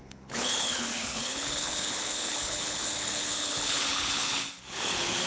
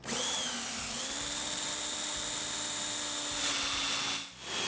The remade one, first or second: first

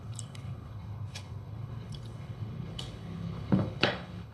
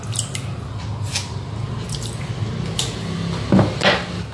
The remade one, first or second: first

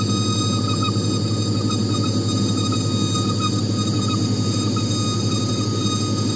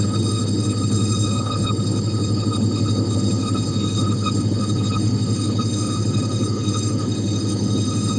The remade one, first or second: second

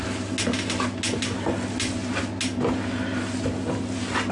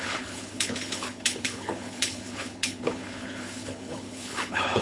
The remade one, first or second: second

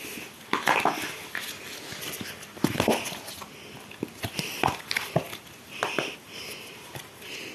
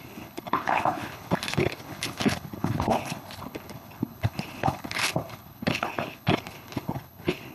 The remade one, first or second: second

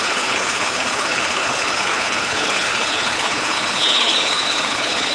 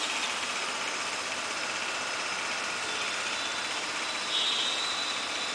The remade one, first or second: first